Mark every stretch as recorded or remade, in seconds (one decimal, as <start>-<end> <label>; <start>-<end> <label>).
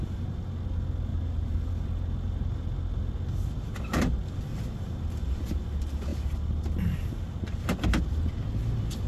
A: 0.0-1.1 recorded; 1.1-1.7 remade; 1.7-4.5 recorded; 4.5-5.3 remade; 5.3-9.1 recorded